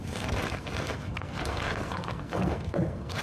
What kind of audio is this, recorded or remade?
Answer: remade